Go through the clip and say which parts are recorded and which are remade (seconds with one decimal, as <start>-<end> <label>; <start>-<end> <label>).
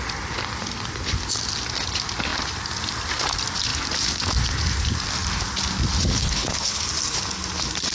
0.0-6.2 recorded; 6.2-6.8 remade; 6.8-7.9 recorded